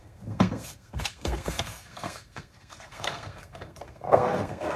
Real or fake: fake